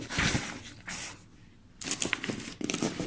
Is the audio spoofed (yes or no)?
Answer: no